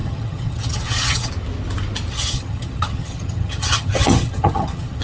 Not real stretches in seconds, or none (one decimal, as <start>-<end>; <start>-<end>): 0.0-1.3; 2.1-5.0